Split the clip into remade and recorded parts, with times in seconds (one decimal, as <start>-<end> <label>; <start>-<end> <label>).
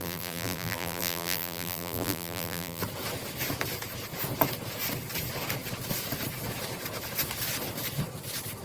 0.0-2.8 remade; 2.8-8.6 recorded